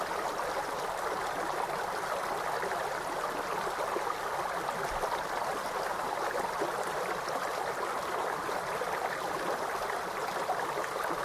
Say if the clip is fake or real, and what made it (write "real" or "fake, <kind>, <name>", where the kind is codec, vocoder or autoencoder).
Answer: real